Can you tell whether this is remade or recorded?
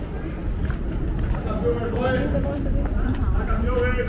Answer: recorded